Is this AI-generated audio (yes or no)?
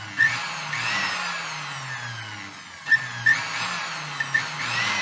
no